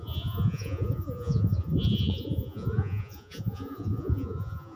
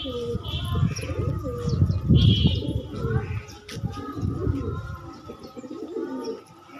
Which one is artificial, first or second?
first